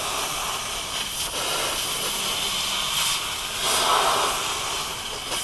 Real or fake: real